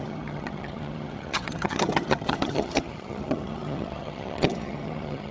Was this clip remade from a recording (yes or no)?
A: yes